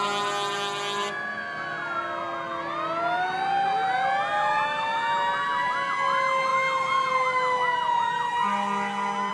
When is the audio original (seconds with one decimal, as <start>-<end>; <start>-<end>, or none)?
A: 0.0-9.3